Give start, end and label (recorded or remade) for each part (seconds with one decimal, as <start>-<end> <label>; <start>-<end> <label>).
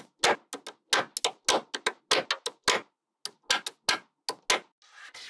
0.0-5.3 recorded